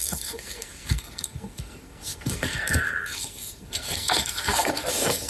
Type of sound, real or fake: fake